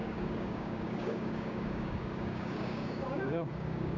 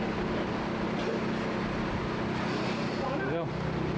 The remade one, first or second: first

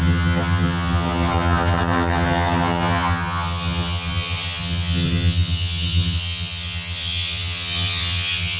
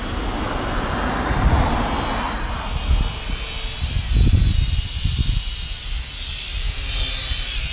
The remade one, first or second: first